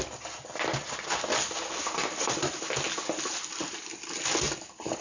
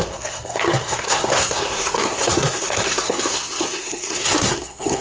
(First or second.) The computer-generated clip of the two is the second